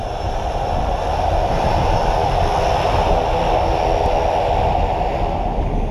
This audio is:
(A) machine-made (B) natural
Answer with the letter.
B